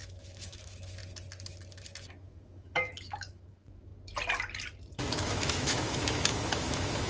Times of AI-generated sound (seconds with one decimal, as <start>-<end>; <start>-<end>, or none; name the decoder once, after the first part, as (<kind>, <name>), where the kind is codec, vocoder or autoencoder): 0.0-1.0 (autoencoder, DAC-VAE); 2.1-3.9; 5.1-7.1